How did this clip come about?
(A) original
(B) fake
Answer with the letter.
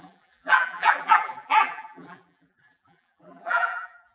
B